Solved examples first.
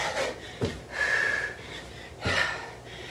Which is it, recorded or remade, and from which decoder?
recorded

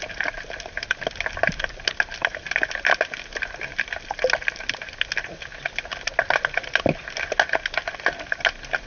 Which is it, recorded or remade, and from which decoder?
recorded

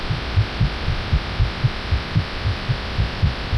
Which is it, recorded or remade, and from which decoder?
recorded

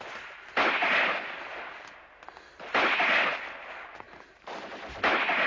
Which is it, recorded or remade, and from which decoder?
recorded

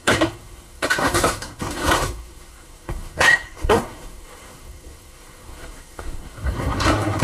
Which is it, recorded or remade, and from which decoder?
remade, codec, SNAC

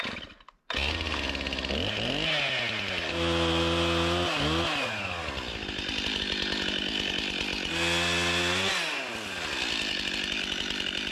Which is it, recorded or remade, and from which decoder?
recorded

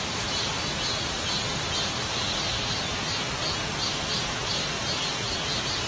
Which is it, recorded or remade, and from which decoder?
recorded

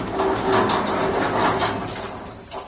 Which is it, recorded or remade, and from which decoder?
recorded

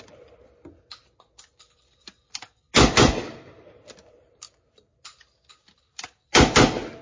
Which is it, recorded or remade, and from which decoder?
recorded